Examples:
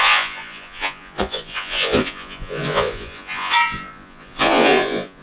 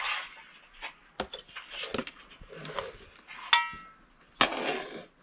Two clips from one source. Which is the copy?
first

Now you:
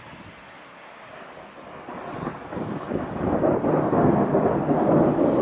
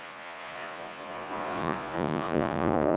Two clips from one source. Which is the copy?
second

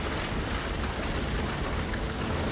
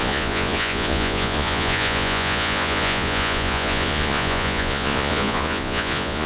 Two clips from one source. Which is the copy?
second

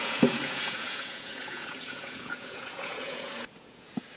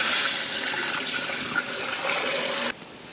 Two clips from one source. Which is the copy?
first